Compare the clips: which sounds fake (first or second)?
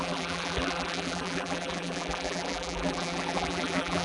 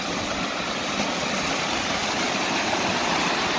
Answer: first